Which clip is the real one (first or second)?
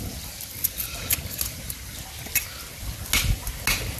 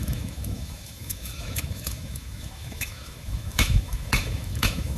first